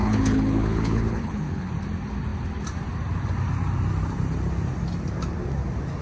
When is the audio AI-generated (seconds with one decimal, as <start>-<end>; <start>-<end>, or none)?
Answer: 0.0-1.7